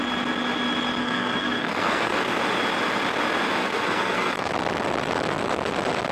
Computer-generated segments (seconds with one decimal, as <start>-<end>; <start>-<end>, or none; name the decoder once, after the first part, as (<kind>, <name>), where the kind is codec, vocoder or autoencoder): 1.0-2.4 (codec, SNAC); 3.6-4.5